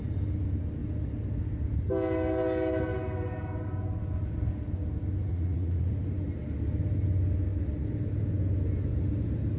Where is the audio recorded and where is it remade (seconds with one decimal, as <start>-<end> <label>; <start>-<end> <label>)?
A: 0.0-5.3 recorded; 5.3-5.9 remade; 5.9-9.6 recorded